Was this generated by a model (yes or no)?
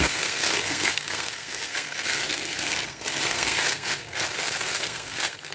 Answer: yes